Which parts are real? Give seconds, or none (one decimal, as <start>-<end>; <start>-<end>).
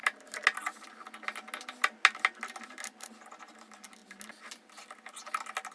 0.0-5.7